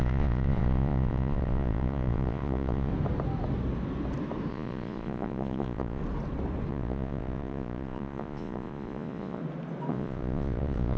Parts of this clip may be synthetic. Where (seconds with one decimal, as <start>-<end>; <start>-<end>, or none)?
0.0-2.9; 4.5-6.0; 6.7-9.4; 9.9-11.0